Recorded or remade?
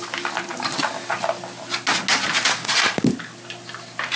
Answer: recorded